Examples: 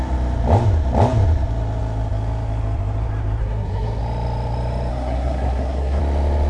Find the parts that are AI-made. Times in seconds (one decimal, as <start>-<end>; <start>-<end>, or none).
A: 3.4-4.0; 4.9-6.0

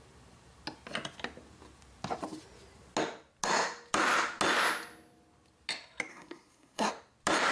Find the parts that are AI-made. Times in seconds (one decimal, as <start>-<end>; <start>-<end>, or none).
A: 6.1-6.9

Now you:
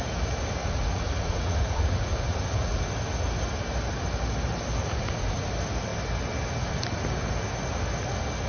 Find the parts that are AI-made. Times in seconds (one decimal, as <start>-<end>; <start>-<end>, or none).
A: 0.6-2.8; 4.8-5.5

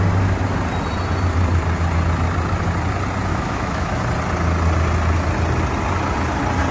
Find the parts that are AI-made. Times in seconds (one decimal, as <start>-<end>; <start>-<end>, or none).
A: 3.3-4.0

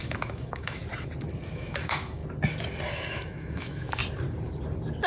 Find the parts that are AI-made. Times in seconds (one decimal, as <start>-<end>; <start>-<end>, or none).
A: 0.0-0.8; 1.5-2.2; 2.9-4.0